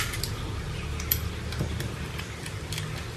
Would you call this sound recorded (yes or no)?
yes